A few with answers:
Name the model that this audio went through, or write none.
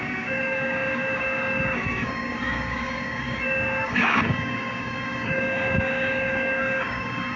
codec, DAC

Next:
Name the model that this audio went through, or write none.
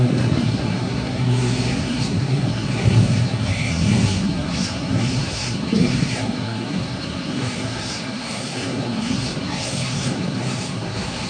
codec, SNAC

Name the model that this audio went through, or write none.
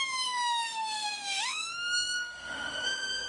autoencoder, DAC-VAE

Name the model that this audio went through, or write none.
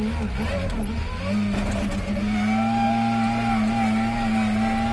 none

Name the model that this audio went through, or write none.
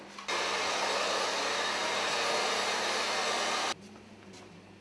none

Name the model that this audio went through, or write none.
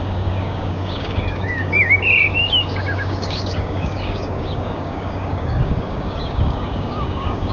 codec, DAC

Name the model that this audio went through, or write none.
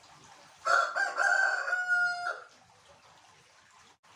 none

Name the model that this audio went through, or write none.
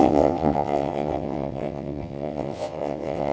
vocoder, WaveNeXt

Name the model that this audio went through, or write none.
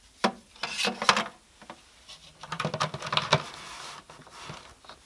none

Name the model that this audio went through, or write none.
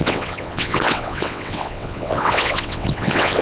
vocoder, WaveNeXt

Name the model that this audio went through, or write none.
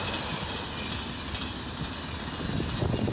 none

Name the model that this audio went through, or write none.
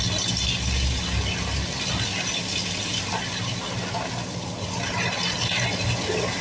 none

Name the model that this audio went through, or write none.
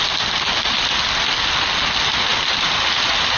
none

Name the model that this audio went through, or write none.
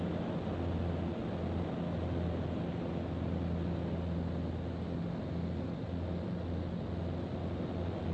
none